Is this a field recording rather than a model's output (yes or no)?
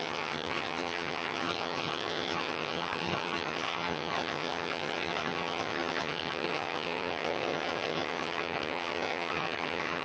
no